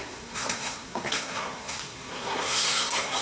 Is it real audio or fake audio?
fake